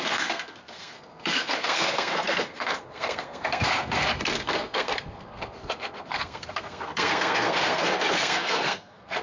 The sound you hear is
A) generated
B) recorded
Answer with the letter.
A